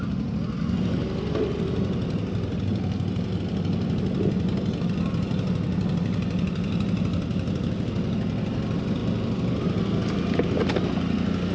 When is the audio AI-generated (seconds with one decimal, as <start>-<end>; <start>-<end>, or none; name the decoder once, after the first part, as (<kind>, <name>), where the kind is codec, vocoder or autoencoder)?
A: none